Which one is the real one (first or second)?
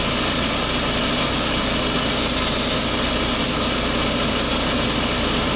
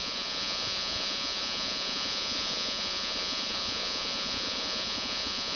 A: first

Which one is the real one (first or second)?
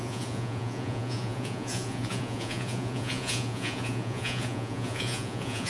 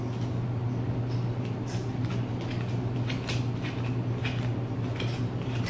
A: second